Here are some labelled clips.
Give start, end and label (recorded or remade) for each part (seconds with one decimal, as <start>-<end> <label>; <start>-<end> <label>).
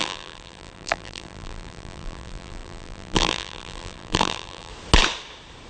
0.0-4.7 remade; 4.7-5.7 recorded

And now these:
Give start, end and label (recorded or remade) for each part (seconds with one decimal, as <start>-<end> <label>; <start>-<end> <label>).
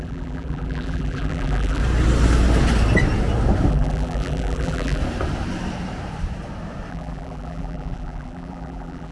0.0-1.8 remade; 1.8-3.7 recorded; 3.7-5.0 remade; 5.0-6.9 recorded; 6.9-9.1 remade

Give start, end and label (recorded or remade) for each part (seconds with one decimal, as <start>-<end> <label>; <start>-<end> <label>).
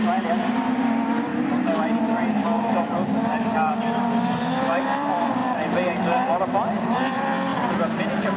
0.0-7.5 remade; 7.5-8.4 recorded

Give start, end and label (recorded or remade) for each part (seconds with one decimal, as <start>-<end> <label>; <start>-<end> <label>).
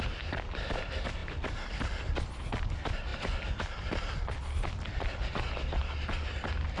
0.0-6.8 recorded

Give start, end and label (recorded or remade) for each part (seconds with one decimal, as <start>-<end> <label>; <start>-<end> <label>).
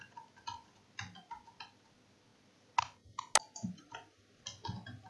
0.0-5.1 recorded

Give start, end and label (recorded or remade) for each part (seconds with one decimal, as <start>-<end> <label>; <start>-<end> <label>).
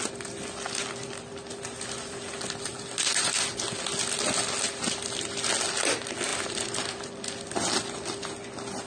0.0-8.9 recorded